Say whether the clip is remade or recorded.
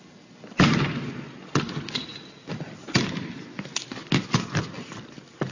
recorded